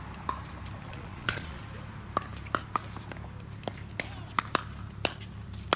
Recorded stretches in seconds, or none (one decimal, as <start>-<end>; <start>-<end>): 0.0-0.9; 1.6-5.8